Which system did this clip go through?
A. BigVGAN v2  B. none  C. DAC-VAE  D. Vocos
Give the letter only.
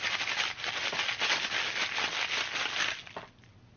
B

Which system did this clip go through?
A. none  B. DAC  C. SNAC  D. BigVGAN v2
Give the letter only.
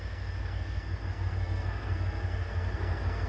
C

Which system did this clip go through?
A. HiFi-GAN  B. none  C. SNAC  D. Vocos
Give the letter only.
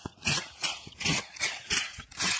D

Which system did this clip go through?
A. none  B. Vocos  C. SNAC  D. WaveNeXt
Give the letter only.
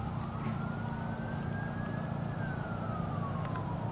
A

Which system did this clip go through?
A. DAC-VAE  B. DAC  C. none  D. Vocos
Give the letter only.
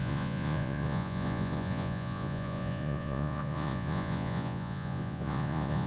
D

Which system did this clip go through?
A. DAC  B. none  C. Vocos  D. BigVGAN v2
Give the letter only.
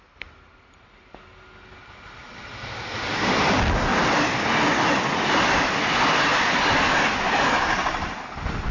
B